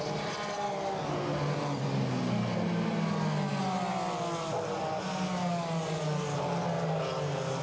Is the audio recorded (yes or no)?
yes